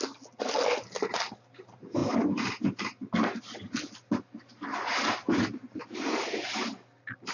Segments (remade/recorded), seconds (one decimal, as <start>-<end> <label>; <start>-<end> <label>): 0.0-7.3 recorded